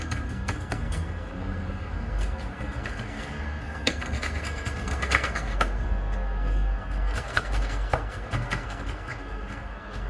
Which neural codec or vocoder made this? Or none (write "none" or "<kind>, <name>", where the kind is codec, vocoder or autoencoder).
codec, SNAC